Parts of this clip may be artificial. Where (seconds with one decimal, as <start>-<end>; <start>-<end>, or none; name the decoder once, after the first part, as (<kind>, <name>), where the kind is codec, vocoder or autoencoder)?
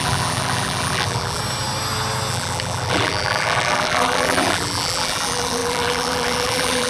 0.0-1.4 (vocoder, BigVGAN v2); 2.3-6.9